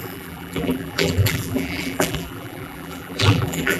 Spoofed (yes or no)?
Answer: yes